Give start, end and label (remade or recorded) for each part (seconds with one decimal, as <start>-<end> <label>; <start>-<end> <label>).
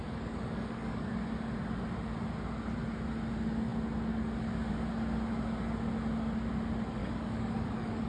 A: 0.0-1.1 remade; 1.1-7.0 recorded; 7.0-8.1 remade